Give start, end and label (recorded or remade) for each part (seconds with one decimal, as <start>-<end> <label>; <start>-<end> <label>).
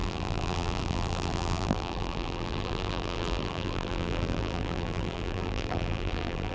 0.0-6.5 remade